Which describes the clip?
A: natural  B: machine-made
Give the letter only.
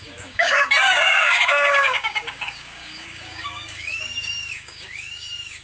B